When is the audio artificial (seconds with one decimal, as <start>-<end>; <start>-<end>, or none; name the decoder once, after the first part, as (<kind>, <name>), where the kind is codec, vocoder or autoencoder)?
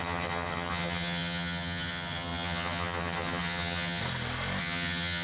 0.0-4.0 (vocoder, HiFi-GAN); 4.6-5.2